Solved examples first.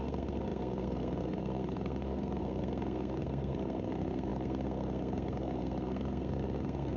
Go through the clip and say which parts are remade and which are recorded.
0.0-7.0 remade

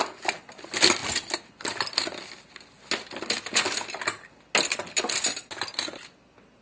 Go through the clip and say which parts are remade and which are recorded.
0.0-6.6 recorded

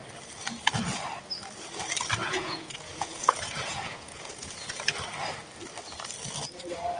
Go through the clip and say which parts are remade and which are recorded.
0.0-2.2 recorded; 2.2-4.8 remade; 4.8-7.0 recorded

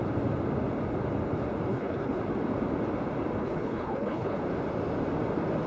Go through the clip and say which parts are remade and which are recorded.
0.0-1.7 recorded; 1.7-2.2 remade; 2.2-3.4 recorded; 3.4-4.4 remade; 4.4-5.7 recorded